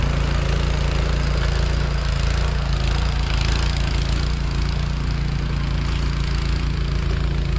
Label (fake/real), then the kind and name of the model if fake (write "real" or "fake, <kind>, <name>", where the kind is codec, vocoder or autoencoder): real